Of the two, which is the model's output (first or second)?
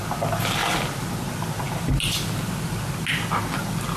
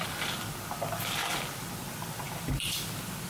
second